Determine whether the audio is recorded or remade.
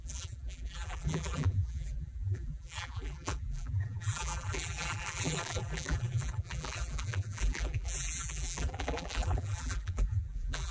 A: remade